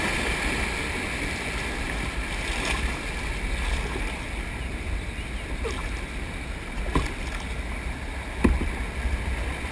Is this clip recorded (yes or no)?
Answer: yes